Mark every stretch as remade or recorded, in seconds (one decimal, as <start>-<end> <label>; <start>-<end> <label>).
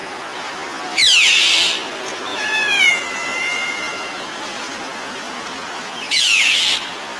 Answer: 0.0-0.5 remade; 0.5-2.3 recorded; 2.3-6.6 remade; 6.6-7.2 recorded